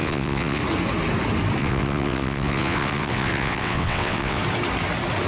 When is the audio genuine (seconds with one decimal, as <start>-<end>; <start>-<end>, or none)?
0.6-1.6; 4.4-5.3